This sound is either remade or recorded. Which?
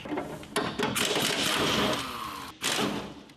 recorded